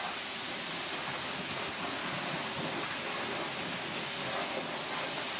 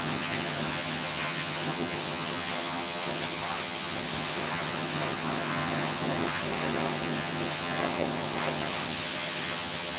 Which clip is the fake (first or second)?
second